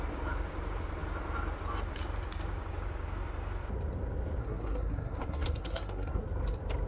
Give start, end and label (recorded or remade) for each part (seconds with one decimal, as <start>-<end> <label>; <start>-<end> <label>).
0.0-4.4 recorded; 4.4-6.2 remade; 6.2-6.9 recorded